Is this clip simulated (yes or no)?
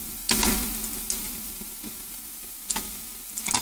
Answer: no